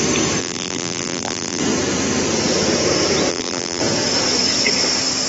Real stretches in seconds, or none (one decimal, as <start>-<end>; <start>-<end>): 0.0-0.4; 1.6-3.3; 3.8-5.3